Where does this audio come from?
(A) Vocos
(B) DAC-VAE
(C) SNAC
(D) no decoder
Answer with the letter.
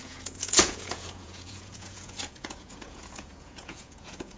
A